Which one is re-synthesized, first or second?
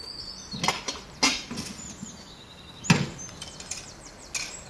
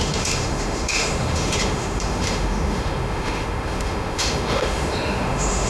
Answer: second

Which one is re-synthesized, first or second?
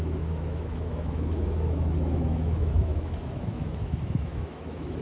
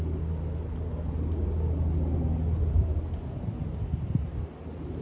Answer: first